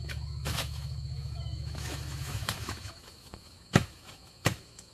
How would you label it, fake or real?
fake